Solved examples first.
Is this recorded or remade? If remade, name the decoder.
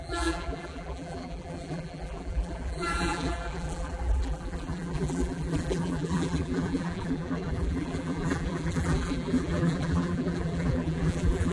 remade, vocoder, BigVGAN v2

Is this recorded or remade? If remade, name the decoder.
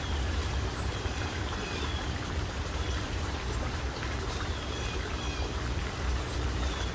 remade, vocoder, BigVGAN v2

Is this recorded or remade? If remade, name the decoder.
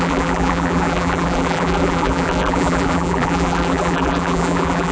remade, vocoder, BigVGAN v2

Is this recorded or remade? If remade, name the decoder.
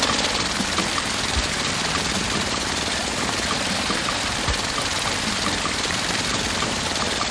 remade, vocoder, BigVGAN v2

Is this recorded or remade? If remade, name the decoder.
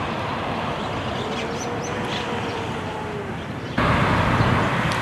remade, vocoder, BigVGAN v2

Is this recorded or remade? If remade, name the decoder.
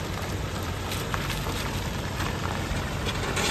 recorded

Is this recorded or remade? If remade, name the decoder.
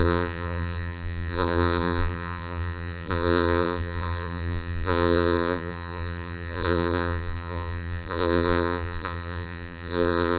remade, vocoder, BigVGAN v2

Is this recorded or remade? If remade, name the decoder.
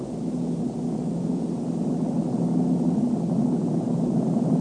recorded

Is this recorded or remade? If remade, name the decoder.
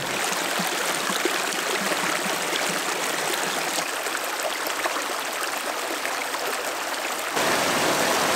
recorded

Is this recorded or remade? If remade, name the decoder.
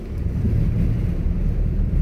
recorded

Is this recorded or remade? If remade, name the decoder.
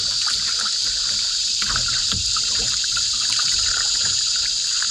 remade, vocoder, BigVGAN v2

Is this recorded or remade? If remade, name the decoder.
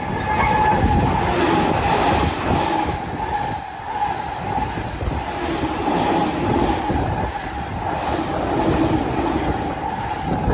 recorded